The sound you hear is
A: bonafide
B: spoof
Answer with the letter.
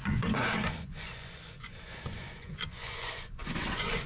B